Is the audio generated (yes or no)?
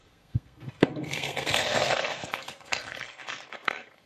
yes